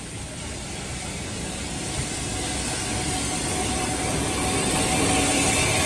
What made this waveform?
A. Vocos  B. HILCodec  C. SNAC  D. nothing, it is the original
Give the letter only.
D